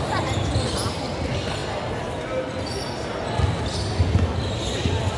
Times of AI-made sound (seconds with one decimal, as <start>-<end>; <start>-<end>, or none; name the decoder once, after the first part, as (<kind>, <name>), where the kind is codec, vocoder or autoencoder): none